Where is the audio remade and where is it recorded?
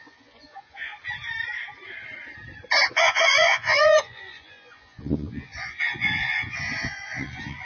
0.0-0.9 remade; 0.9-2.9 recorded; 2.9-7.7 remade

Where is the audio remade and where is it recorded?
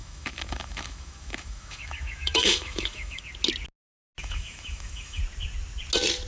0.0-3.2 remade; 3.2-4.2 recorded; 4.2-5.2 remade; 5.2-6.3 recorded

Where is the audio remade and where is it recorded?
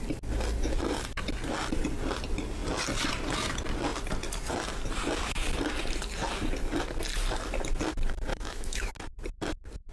0.0-8.3 recorded; 8.3-8.9 remade; 8.9-9.9 recorded